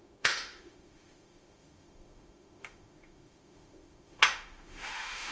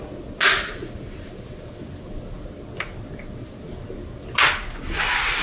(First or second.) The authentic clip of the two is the second